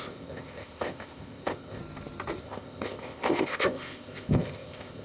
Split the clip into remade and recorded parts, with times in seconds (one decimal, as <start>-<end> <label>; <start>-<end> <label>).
0.0-1.8 remade; 1.8-2.4 recorded; 2.4-5.0 remade